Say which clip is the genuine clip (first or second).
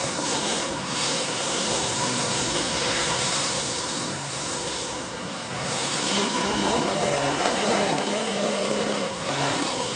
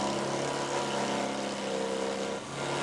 second